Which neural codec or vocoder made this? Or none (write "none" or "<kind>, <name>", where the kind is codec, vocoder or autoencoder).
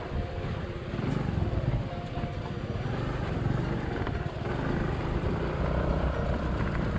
vocoder, BigVGAN v2